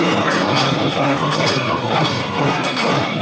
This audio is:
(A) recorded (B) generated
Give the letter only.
B